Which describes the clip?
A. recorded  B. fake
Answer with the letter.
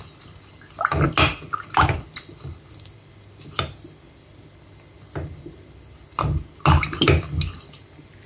A